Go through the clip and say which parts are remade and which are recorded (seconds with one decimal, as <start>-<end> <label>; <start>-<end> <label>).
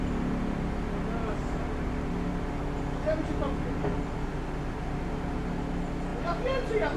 0.0-7.0 recorded